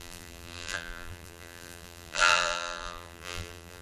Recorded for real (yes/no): no